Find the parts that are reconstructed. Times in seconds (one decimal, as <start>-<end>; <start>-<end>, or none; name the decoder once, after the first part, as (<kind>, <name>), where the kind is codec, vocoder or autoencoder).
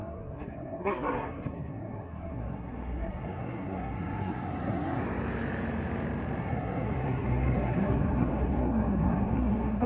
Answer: 0.0-5.0 (codec, SNAC); 6.4-9.9